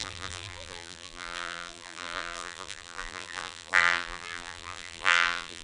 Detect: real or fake fake